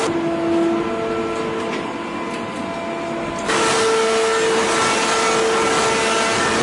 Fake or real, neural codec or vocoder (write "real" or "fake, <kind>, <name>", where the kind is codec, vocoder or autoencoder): real